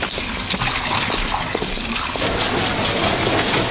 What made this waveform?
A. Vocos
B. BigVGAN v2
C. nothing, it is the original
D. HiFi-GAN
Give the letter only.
C